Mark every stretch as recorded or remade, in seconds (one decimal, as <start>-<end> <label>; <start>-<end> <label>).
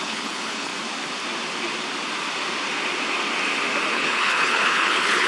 0.0-0.7 remade; 0.7-3.9 recorded; 3.9-5.3 remade